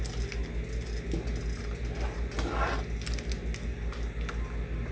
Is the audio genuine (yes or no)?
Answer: yes